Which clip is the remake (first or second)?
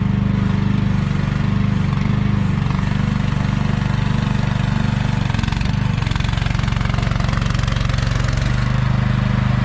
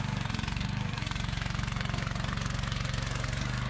second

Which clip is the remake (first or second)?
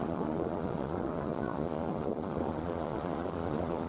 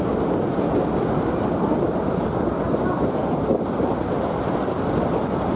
first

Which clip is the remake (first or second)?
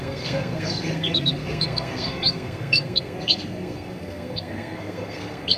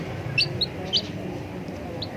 first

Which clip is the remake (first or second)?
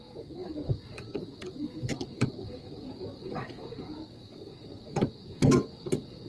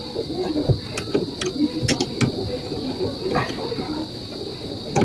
first